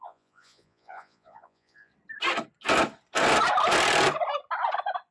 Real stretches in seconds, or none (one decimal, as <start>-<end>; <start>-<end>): 1.9-5.1